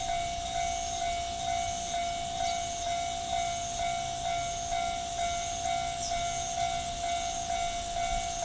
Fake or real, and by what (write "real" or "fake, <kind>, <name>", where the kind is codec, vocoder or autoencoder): real